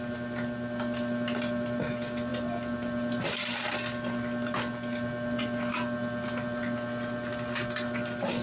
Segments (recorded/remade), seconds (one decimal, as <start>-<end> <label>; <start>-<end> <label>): 0.0-8.4 recorded